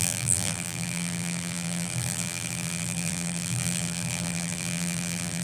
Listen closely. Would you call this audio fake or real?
fake